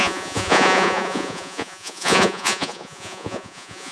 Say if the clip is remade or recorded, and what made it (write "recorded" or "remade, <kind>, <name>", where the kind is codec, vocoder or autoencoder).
remade, vocoder, Vocos